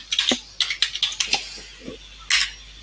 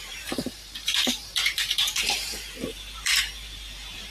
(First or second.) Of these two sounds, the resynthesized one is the second